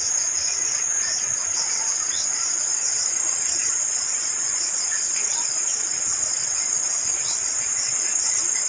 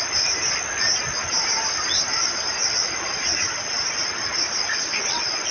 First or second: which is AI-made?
first